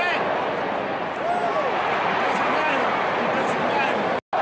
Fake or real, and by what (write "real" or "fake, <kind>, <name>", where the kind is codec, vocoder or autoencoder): real